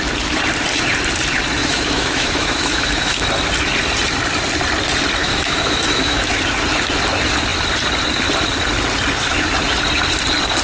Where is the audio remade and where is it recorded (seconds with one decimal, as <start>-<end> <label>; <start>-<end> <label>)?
0.0-1.6 recorded; 1.6-3.2 remade; 3.2-5.2 recorded; 5.2-6.4 remade; 6.4-10.6 recorded